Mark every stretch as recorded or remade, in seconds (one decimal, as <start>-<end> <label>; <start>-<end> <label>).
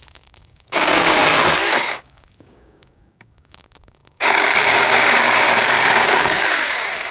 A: 0.0-1.2 remade; 1.2-1.7 recorded; 1.7-7.1 remade